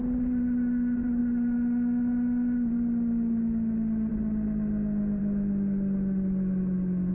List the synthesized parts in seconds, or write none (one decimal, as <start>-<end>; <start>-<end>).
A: none